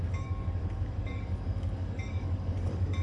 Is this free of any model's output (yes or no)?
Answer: no